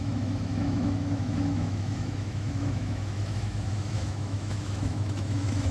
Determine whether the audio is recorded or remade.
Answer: remade